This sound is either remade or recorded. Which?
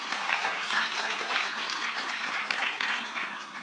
remade